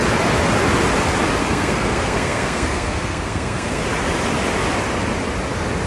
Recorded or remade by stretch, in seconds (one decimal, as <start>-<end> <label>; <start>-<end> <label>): 0.0-1.4 recorded; 1.4-3.8 remade; 3.8-5.9 recorded